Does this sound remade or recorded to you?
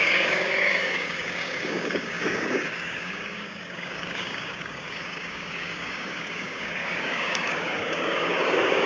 remade